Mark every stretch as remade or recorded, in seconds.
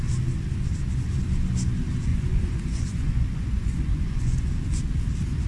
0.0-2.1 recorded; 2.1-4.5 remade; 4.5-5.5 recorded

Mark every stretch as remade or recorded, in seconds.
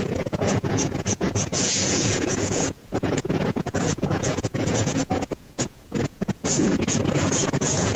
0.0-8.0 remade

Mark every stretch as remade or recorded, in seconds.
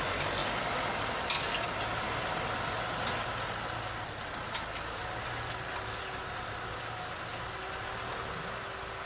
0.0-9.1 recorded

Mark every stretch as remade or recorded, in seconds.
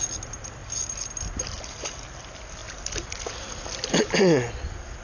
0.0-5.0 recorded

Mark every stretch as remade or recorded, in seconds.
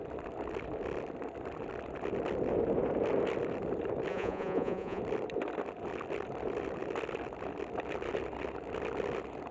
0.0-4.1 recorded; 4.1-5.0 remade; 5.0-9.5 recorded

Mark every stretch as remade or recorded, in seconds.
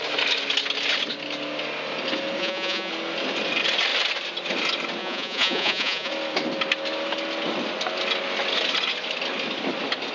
0.0-2.4 recorded; 2.4-2.9 remade; 2.9-5.0 recorded; 5.0-6.1 remade; 6.1-10.1 recorded